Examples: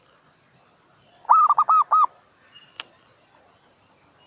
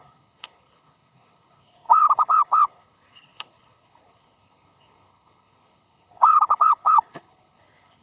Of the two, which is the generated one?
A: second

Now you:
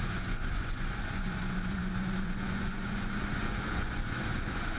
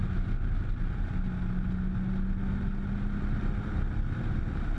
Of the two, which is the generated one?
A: first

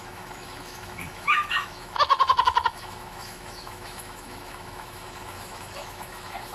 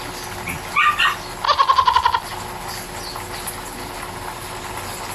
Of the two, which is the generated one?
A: first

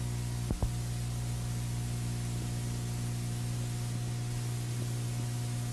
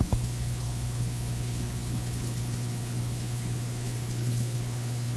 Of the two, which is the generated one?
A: second